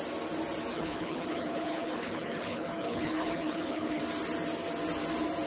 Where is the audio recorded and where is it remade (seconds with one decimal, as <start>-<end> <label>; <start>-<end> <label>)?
0.0-0.7 recorded; 0.7-4.0 remade; 4.0-5.5 recorded